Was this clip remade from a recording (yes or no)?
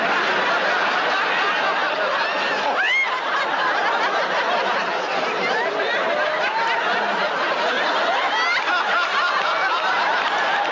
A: no